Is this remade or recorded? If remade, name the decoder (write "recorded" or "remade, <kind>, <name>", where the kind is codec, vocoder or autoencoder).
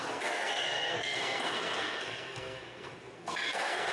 remade, codec, SNAC